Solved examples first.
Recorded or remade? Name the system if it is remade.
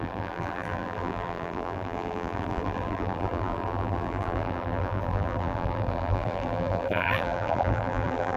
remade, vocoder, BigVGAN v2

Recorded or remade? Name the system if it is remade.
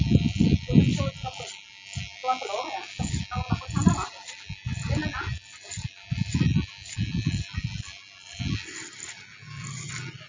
recorded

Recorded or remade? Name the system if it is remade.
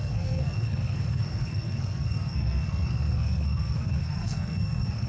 remade, codec, SNAC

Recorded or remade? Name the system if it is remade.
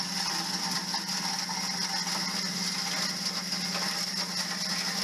recorded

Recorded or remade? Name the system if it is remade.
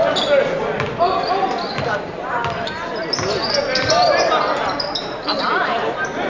recorded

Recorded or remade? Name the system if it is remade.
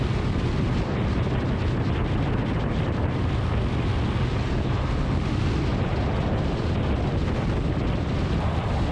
recorded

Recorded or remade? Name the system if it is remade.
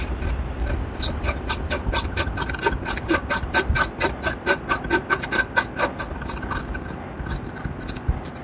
recorded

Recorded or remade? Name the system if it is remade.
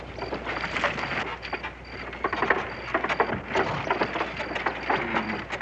recorded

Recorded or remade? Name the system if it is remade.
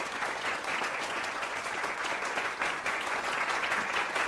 remade, vocoder, Vocos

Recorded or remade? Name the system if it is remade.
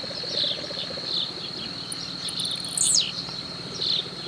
recorded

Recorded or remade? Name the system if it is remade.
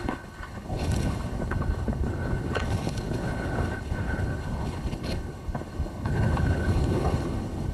remade, codec, HILCodec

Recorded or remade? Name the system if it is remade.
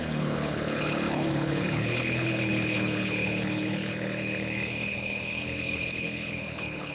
remade, codec, HILCodec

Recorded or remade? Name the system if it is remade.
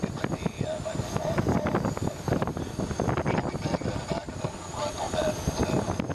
recorded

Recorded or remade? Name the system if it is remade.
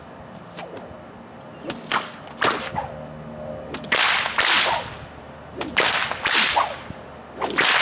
recorded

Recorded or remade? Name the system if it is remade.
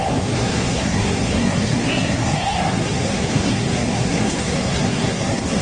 remade, codec, SNAC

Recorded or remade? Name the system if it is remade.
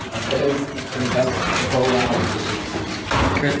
recorded